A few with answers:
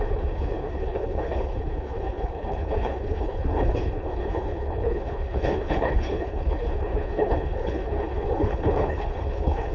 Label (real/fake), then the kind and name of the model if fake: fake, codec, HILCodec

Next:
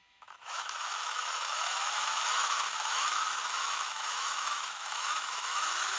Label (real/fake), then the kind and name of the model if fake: fake, autoencoder, DAC-VAE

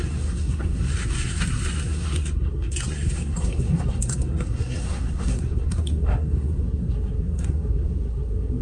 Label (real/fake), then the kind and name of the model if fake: fake, codec, SNAC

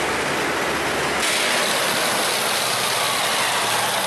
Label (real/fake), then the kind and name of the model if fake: real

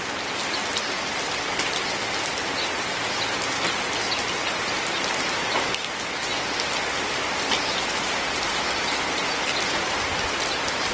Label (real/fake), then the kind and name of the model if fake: real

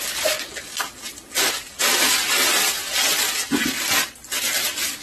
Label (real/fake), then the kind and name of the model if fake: fake, vocoder, BigVGAN v2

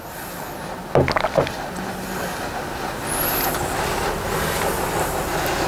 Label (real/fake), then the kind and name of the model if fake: real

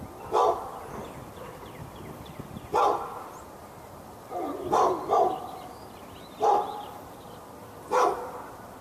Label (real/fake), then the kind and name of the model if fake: fake, vocoder, BigVGAN v2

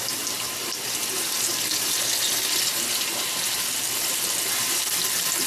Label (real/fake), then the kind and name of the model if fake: real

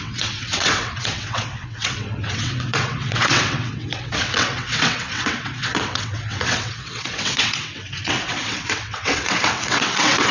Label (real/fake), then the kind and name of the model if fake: fake, vocoder, WaveNeXt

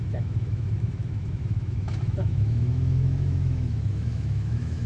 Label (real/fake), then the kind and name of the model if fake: fake, autoencoder, DAC-VAE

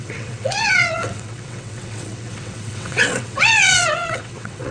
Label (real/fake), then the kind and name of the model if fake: fake, vocoder, WaveNeXt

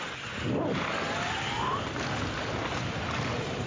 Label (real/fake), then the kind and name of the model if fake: real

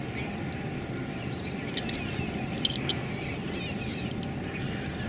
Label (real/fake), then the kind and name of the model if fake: real